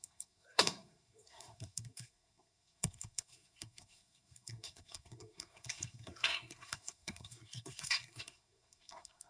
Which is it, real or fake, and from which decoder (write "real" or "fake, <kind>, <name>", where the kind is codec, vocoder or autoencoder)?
fake, codec, SNAC